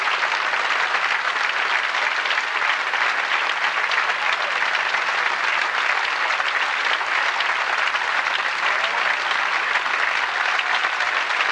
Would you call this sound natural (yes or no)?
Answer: yes